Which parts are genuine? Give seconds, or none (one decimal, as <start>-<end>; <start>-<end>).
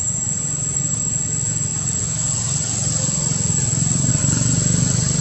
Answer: 0.0-5.2